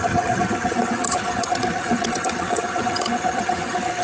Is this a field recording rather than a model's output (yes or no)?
no